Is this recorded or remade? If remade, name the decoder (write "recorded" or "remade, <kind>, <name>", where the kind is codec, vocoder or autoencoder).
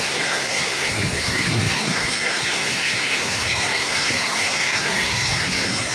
remade, codec, SNAC